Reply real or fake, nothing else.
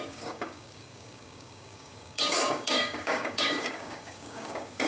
fake